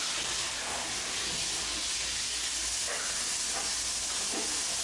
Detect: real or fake real